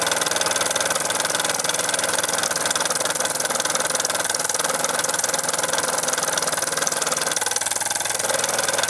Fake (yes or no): no